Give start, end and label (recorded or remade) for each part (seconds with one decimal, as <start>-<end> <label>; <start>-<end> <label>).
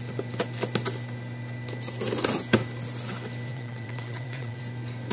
0.0-3.5 recorded; 3.5-4.6 remade; 4.6-5.1 recorded